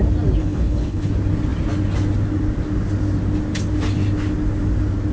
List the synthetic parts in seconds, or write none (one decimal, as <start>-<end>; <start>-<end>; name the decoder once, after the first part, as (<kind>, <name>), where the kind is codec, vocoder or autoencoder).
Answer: 0.4-1.1 (codec, HILCodec)